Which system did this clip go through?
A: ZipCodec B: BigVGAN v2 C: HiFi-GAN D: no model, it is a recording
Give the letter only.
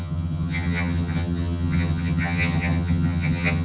C